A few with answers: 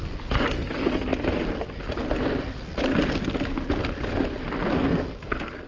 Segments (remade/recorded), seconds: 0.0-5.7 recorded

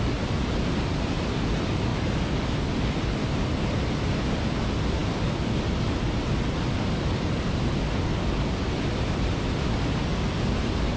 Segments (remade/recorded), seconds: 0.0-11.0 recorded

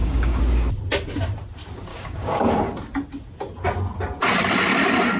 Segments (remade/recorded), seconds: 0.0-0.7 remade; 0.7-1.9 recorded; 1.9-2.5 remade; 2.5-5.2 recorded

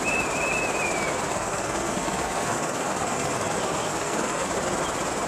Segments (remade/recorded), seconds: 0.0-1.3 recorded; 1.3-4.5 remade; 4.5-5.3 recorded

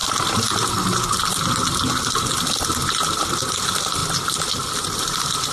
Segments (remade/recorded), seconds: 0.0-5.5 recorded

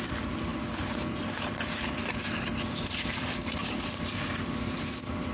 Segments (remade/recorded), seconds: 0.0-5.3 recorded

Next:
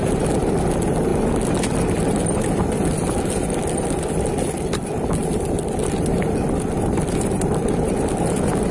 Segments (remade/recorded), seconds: 0.0-8.7 recorded